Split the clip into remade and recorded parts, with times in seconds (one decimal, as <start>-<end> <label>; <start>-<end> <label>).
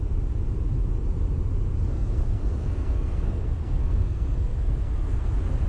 0.0-1.9 recorded; 1.9-5.3 remade; 5.3-5.7 recorded